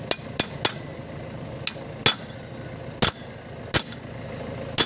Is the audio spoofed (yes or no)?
no